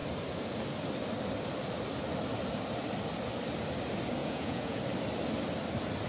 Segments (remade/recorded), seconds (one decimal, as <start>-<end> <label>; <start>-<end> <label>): 0.0-4.2 recorded; 4.2-4.8 remade; 4.8-6.1 recorded